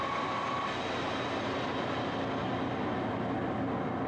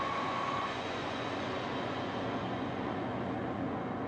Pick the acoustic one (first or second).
first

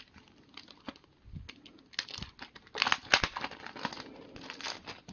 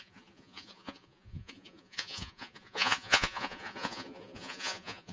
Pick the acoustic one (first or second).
first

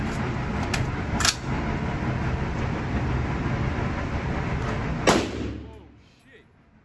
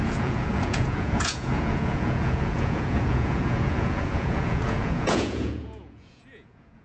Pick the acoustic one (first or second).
first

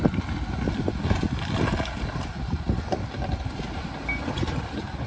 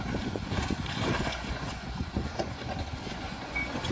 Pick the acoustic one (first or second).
first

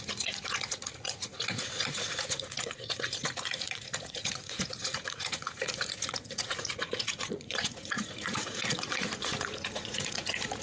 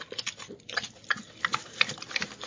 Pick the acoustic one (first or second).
second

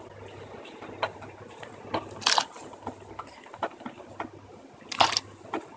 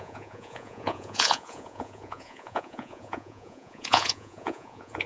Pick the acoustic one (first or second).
first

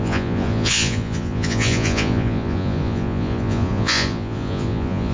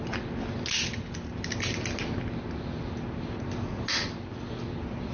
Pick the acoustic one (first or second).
second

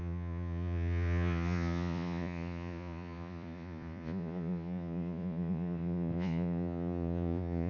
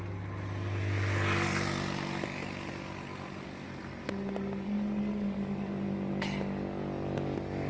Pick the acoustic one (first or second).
second